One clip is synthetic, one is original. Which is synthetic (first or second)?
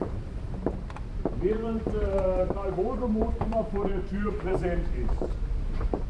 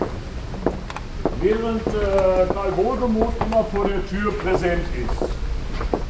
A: first